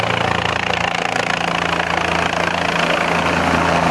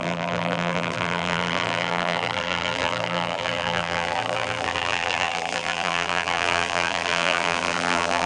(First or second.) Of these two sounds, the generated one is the second